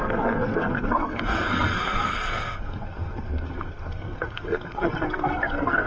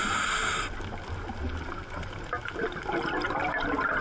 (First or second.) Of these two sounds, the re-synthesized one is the first